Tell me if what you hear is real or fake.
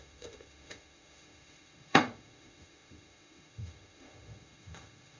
fake